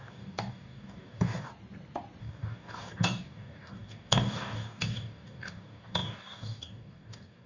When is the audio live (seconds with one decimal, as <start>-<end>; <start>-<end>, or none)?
1.5-2.2